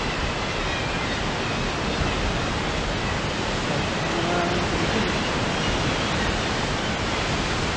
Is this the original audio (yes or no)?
yes